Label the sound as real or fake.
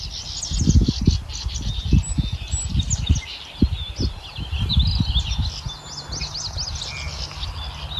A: real